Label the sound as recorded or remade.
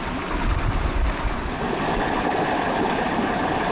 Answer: recorded